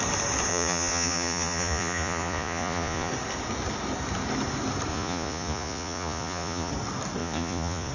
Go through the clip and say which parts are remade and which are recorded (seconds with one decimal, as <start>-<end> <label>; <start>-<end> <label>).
0.0-0.5 recorded; 0.5-3.1 remade; 3.1-4.9 recorded; 4.9-6.7 remade; 6.7-7.2 recorded; 7.2-7.9 remade